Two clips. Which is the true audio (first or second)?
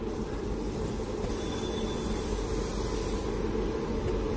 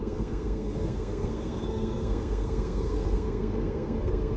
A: first